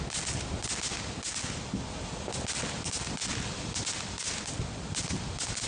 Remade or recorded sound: recorded